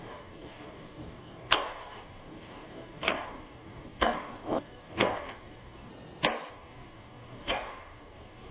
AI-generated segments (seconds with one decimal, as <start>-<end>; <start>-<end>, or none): 0.0-5.9; 6.5-8.5